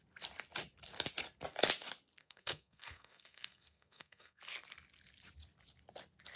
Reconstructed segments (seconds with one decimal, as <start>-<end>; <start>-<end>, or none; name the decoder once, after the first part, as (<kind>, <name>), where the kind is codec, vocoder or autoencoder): 2.2-4.4 (codec, SNAC)